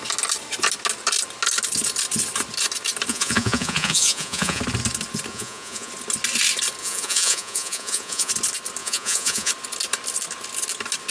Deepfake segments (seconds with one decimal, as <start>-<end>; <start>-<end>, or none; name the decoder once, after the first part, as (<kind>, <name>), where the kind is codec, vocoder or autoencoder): 3.1-4.6 (vocoder, Vocos); 5.3-5.9; 6.8-8.3; 8.8-9.5